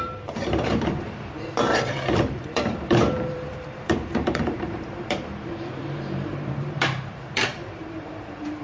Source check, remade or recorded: remade